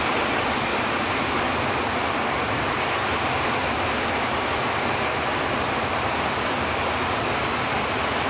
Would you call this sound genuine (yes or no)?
yes